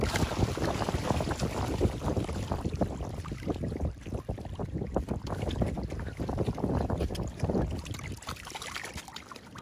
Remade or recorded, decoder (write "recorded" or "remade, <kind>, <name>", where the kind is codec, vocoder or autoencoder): remade, vocoder, BigVGAN v2